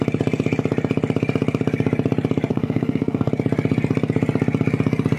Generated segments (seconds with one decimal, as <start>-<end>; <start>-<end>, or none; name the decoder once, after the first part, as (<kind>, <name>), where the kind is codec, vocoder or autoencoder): 2.5-3.3 (codec, SNAC)